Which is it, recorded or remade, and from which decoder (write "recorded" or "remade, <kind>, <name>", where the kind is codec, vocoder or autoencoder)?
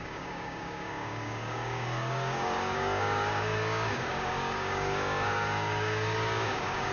remade, codec, DAC